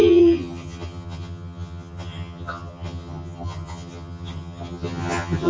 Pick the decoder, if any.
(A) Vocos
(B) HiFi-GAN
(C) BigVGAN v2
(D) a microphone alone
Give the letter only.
B